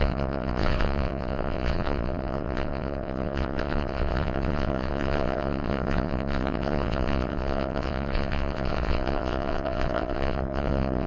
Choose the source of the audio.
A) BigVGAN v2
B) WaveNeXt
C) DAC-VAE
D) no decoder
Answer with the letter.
B